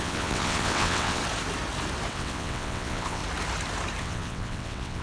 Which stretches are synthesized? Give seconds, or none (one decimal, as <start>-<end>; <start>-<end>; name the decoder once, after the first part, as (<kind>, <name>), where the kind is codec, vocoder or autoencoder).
0.0-1.2 (vocoder, WaveNeXt); 2.1-3.2; 4.0-5.0